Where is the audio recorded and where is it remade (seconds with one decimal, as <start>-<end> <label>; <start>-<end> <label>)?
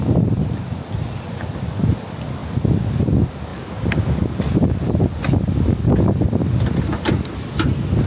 0.0-8.1 recorded